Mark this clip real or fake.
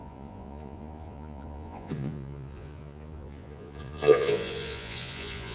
fake